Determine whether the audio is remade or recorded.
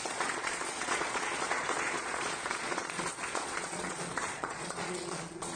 remade